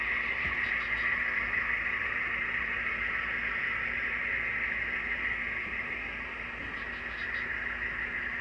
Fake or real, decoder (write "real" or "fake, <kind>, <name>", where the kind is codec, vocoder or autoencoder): real